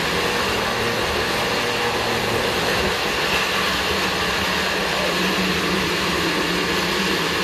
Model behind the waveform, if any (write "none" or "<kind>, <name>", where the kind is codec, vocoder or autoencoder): none